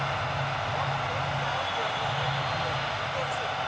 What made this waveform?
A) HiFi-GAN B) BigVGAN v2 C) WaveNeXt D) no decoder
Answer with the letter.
D